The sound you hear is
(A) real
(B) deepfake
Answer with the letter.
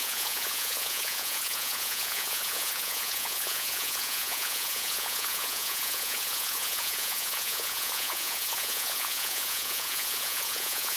B